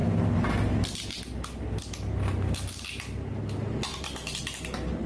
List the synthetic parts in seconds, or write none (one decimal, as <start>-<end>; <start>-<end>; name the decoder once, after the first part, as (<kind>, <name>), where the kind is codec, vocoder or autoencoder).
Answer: 3.9-4.4 (vocoder, BigVGAN v2)